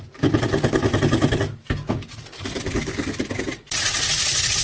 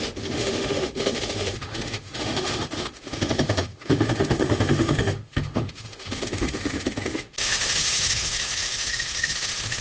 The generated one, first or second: second